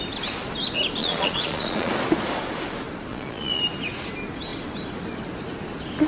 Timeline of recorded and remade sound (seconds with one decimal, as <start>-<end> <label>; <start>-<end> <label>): 0.0-1.0 recorded; 1.0-1.9 remade; 1.9-3.1 recorded; 3.1-3.6 remade; 3.6-6.1 recorded